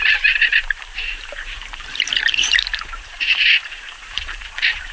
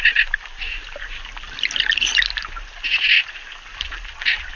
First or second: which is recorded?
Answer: second